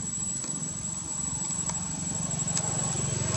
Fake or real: real